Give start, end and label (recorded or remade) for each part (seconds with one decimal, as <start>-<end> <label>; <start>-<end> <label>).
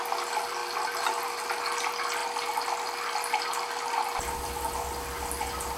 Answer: 0.0-5.8 recorded